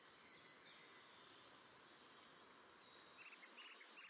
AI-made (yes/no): no